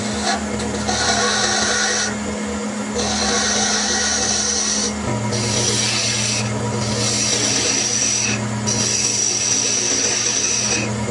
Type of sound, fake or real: real